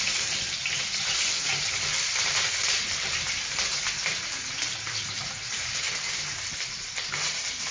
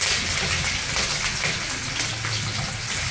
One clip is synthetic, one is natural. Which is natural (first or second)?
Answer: second